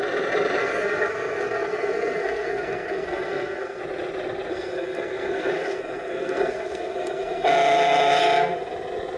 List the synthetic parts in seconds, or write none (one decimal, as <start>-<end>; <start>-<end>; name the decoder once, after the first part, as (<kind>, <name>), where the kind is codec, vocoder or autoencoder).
0.6-3.8 (codec, SNAC); 4.5-8.2